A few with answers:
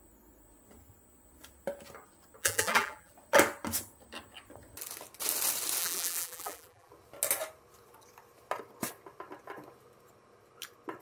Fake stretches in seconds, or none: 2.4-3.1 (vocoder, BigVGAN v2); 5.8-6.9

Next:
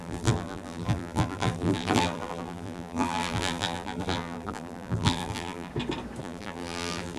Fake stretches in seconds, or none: 0.0-5.7 (vocoder, BigVGAN v2); 6.2-7.2

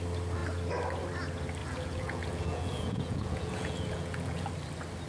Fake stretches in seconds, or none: 1.6-4.5 (vocoder, Vocos)

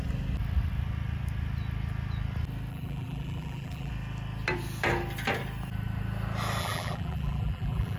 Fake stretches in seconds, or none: 2.7-3.9 (vocoder, BigVGAN v2); 6.6-8.0

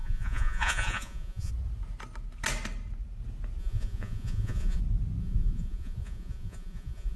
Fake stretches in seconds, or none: 0.0-1.5 (vocoder, Vocos); 3.6-4.8; 5.2-7.2

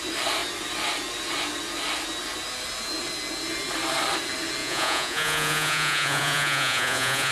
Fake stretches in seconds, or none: 4.6-7.3 (vocoder, Vocos)

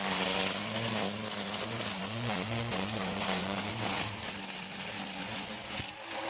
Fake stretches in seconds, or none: 2.0-3.7 (vocoder, Vocos); 5.2-5.8

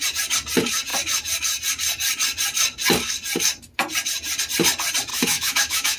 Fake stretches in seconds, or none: 5.1-6.0 (autoencoder, DAC-VAE)